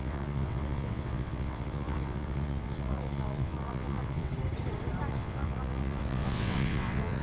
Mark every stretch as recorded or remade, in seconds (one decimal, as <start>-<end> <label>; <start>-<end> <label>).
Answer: 0.0-4.3 remade; 4.3-5.1 recorded; 5.1-7.2 remade